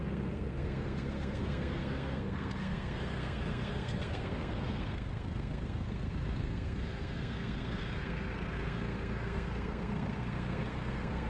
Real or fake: fake